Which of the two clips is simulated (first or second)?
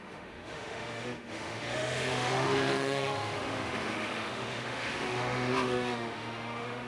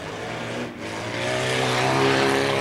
first